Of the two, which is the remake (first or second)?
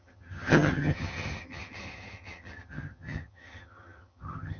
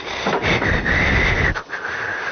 first